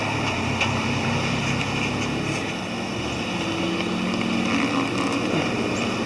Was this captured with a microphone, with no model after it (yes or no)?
yes